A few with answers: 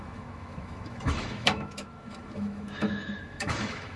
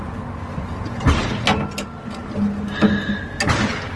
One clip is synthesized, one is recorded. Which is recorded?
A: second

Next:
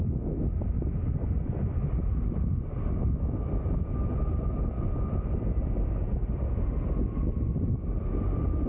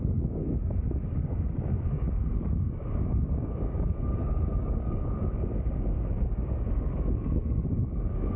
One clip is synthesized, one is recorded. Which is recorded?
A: first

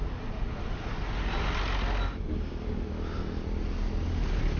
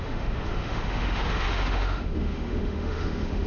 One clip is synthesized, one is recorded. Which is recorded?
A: first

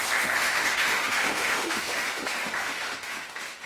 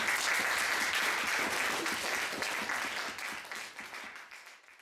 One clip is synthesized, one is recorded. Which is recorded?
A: second